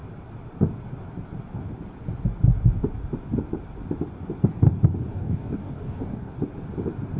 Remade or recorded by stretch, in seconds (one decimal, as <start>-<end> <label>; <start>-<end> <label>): 0.0-5.1 recorded; 5.1-6.3 remade; 6.3-7.2 recorded

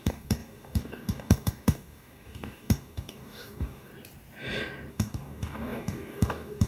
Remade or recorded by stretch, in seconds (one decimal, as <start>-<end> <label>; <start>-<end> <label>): 0.0-3.9 remade; 3.9-4.9 recorded; 4.9-6.7 remade

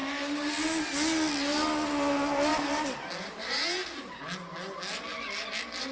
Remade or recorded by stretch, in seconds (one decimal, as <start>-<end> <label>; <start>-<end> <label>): 0.0-0.5 remade; 0.5-5.9 recorded

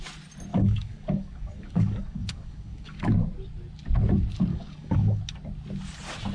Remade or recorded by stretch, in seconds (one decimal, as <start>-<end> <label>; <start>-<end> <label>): 0.0-0.5 recorded; 0.5-3.0 remade; 3.0-4.5 recorded; 4.5-5.2 remade; 5.2-6.3 recorded

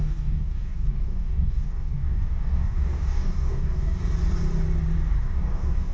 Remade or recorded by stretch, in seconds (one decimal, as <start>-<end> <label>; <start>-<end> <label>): 0.0-4.0 remade; 4.0-5.2 recorded; 5.2-5.9 remade

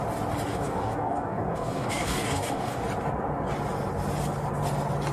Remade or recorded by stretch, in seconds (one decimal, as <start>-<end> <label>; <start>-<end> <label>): 0.0-0.5 recorded; 0.5-2.8 remade; 2.8-5.1 recorded

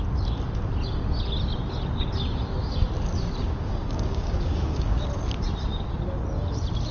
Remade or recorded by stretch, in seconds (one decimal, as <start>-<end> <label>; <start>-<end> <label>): 0.0-3.4 recorded; 3.4-5.0 remade; 5.0-6.9 recorded